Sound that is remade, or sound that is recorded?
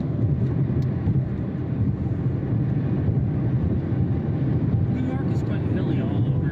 recorded